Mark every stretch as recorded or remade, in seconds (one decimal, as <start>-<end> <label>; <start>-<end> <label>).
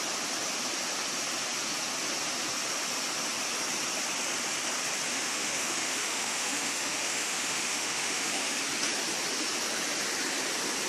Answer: 0.0-5.1 recorded; 5.1-8.6 remade; 8.6-10.9 recorded